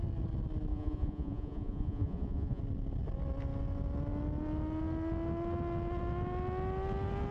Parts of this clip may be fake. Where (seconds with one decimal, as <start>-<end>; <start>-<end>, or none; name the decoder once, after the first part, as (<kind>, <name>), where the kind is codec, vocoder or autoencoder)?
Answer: 0.7-2.6 (vocoder, Vocos)